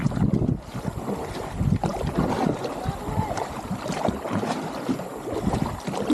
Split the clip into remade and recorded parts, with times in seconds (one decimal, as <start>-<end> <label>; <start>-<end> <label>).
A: 0.0-6.1 recorded